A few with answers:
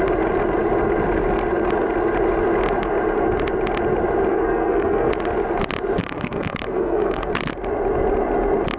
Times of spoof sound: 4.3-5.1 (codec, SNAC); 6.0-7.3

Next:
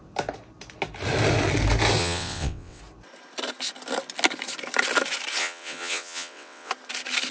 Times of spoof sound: 2.0-2.8 (vocoder, WaveNeXt); 5.4-6.7

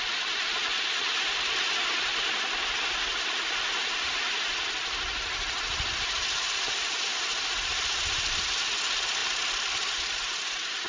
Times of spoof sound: none

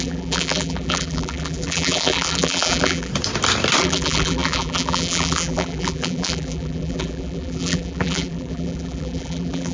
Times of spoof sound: 0.0-3.1 (vocoder, BigVGAN v2); 3.8-9.7

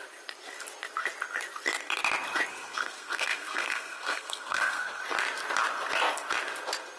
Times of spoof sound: 2.5-5.0 (codec, SNAC)

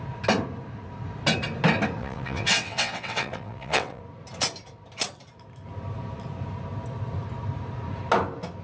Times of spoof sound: 2.0-4.0 (vocoder, WaveNeXt)

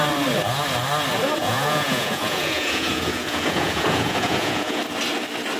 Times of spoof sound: 1.4-4.8 (vocoder, Vocos)

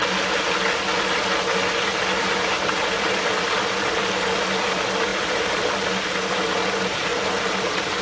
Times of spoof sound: 1.9-3.1 (vocoder, BigVGAN v2); 5.1-5.6; 7.1-8.0